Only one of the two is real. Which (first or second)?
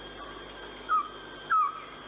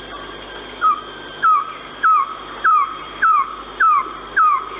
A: first